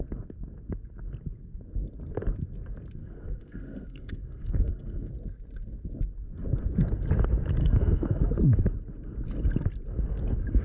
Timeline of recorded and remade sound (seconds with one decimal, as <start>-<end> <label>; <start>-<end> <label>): 0.0-3.0 recorded; 3.0-5.1 remade; 5.1-7.6 recorded; 7.6-8.2 remade; 8.2-10.6 recorded